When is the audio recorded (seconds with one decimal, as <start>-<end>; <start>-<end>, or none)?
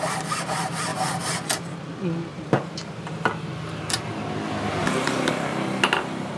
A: 0.0-2.3; 3.0-4.8; 5.3-6.4